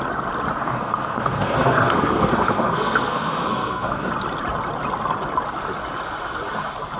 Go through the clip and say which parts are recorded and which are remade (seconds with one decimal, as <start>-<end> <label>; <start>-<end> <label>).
0.0-0.6 recorded; 0.6-4.1 remade; 4.1-7.0 recorded